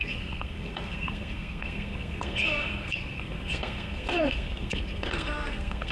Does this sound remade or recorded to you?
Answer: remade